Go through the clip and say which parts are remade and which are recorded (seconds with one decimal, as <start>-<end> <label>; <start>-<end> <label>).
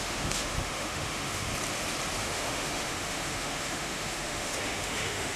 0.0-1.5 remade; 1.5-2.2 recorded; 2.2-5.4 remade